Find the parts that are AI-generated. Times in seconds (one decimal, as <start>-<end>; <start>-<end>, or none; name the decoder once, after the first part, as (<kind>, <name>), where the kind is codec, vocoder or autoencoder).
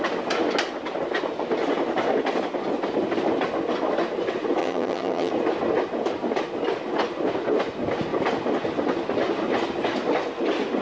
4.6-5.3 (vocoder, HiFi-GAN)